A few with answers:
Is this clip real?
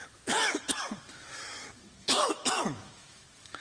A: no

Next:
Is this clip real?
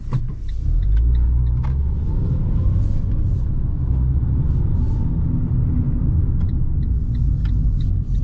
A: yes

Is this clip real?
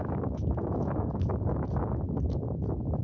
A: no